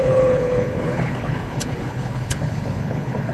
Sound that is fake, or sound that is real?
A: fake